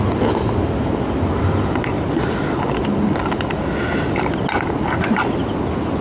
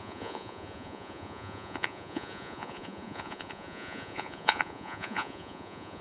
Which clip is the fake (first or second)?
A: second